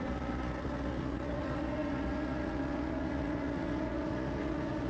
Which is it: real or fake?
fake